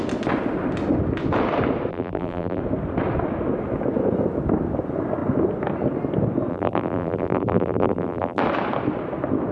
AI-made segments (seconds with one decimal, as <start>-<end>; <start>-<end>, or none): 1.9-2.6; 6.5-8.4